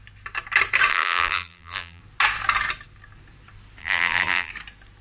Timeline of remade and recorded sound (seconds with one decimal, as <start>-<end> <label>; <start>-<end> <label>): 0.0-0.9 recorded; 0.9-2.0 remade; 2.0-3.8 recorded; 3.8-4.5 remade; 4.5-5.0 recorded